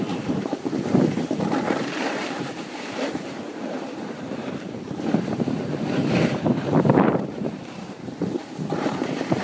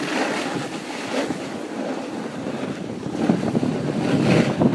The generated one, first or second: first